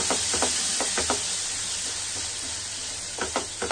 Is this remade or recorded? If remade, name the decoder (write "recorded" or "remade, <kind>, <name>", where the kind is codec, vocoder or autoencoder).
recorded